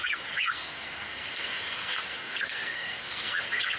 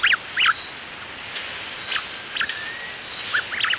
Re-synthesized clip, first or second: first